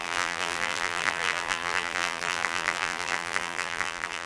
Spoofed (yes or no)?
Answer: yes